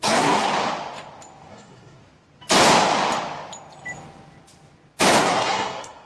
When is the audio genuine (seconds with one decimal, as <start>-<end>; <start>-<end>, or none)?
0.5-1.5; 2.0-5.2